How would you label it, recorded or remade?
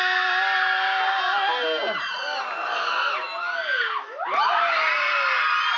recorded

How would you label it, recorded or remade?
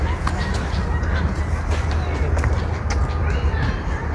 recorded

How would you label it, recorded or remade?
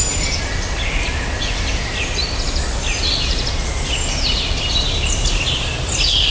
recorded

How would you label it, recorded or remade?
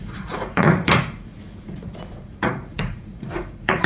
remade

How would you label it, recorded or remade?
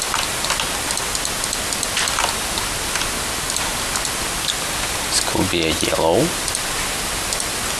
recorded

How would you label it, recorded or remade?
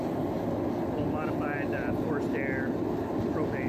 recorded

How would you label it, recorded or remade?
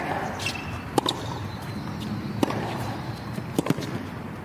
recorded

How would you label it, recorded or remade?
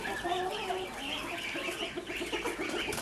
recorded